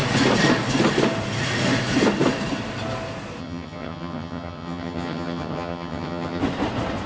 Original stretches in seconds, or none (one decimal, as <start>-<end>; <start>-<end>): 0.0-3.4; 6.4-7.1